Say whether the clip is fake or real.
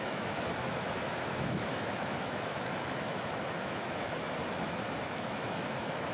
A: fake